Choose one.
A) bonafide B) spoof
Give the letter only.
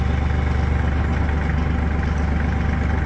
A